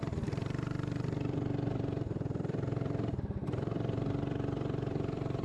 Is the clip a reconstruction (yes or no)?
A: yes